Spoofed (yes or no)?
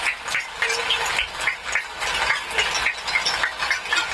no